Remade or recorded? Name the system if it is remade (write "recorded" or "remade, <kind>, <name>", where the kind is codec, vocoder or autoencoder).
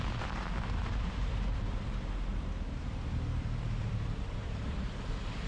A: remade, vocoder, BigVGAN v2